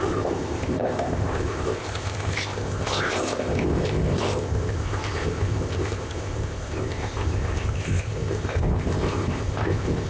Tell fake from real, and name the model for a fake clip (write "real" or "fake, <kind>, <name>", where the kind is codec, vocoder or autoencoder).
fake, codec, ZipCodec